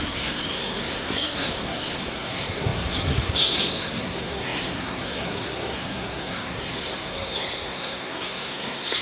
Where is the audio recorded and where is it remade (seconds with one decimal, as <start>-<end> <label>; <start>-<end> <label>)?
0.0-9.0 remade